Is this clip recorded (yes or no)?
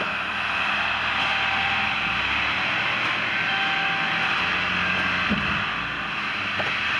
yes